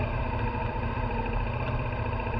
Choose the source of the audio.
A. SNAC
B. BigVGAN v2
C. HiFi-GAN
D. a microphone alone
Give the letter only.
B